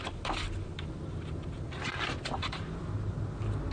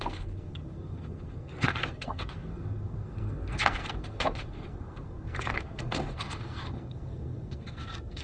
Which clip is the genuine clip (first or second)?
first